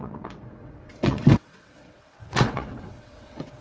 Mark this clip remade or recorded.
remade